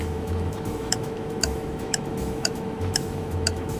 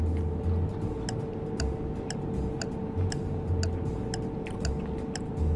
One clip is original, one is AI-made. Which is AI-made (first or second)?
first